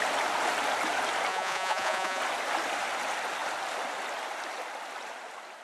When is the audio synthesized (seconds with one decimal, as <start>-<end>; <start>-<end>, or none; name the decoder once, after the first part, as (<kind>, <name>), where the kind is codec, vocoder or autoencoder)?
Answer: 1.3-2.2 (vocoder, Vocos)